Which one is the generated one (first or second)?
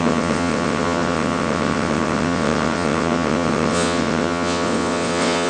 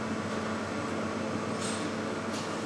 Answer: first